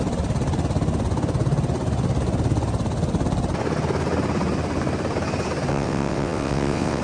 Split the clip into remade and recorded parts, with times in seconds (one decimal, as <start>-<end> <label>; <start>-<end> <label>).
0.0-5.7 recorded; 5.7-7.0 remade